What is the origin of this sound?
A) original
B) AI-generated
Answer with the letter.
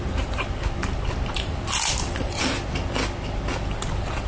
A